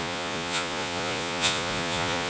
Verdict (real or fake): fake